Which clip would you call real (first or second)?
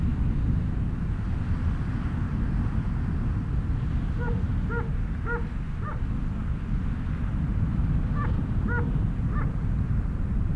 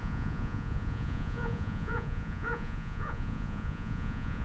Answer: first